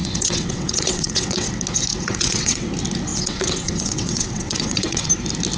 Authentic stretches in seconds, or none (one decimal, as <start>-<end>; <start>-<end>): 1.5-1.9; 2.7-3.1; 5.1-5.6